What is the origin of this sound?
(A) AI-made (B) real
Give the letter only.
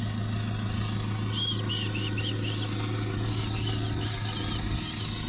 B